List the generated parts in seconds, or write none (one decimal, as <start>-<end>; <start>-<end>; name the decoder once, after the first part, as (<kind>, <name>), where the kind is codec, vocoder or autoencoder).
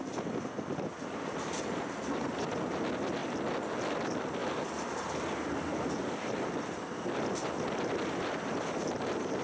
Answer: none